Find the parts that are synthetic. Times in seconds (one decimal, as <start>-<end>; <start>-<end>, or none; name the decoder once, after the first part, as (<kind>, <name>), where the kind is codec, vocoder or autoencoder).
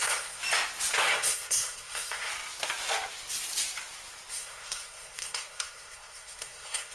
0.0-0.4 (codec, SNAC); 1.0-2.3; 4.3-6.9